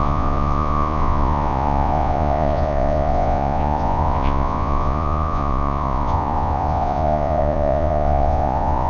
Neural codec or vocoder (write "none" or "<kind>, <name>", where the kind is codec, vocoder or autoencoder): vocoder, Vocos